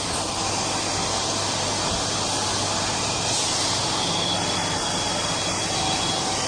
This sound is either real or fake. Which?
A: real